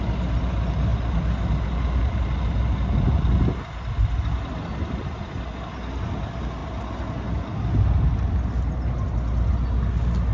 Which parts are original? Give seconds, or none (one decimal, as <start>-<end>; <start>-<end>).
0.0-10.3